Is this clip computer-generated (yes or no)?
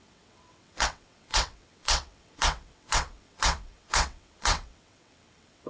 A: yes